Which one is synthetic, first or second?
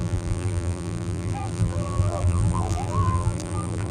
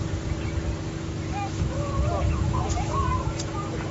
first